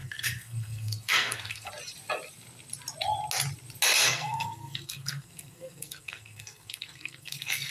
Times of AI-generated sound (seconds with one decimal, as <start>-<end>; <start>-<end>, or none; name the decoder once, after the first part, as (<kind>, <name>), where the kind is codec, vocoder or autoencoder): 0.0-1.7 (codec, SNAC); 4.0-7.7